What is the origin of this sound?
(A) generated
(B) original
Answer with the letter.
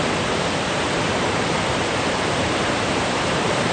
A